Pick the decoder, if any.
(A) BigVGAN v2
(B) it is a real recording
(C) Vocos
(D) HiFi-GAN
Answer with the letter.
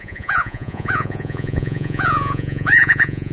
C